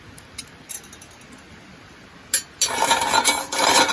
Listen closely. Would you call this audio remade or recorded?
recorded